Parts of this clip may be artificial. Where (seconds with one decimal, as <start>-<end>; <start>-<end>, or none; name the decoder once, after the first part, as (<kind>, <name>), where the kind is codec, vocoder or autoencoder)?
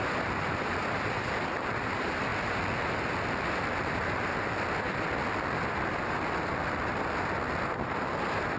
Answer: 0.0-2.3 (vocoder, BigVGAN v2); 6.0-8.6